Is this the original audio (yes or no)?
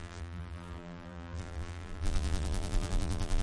no